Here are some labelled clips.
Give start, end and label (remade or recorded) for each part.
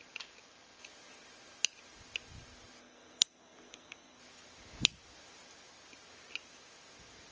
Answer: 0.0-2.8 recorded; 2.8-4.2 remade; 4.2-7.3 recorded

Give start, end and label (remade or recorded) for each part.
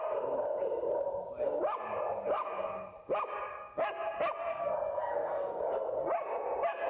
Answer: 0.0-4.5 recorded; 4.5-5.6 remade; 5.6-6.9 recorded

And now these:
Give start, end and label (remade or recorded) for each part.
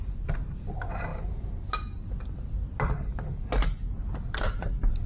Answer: 0.0-5.1 recorded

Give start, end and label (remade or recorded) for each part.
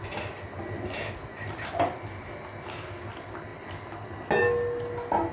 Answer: 0.0-5.3 recorded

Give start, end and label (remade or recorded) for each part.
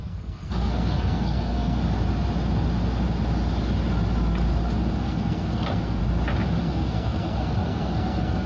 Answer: 0.0-1.8 remade; 1.8-4.9 recorded; 4.9-6.0 remade; 6.0-6.6 recorded; 6.6-8.5 remade